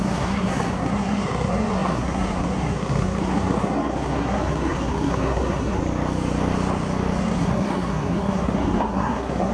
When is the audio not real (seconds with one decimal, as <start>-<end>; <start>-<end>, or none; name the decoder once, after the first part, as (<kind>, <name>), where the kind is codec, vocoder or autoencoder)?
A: 0.0-5.8 (codec, SNAC); 7.2-9.5